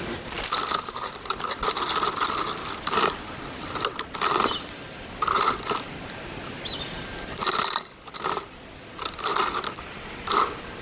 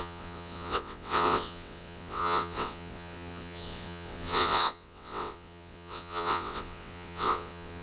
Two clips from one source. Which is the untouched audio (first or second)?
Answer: first